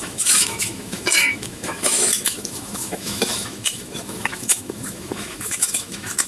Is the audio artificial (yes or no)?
yes